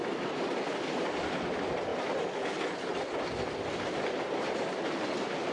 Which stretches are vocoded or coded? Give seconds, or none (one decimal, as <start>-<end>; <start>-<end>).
none